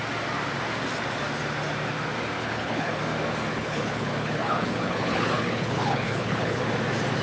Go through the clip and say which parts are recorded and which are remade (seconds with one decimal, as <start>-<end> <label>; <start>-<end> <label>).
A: 0.0-2.4 recorded; 2.4-3.0 remade; 3.0-3.5 recorded; 3.5-6.6 remade; 6.6-7.2 recorded